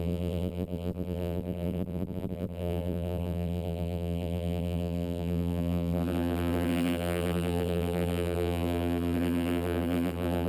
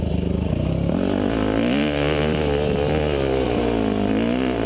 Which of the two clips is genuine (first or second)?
second